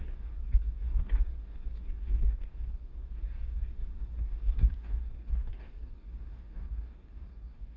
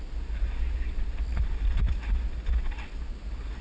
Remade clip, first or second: first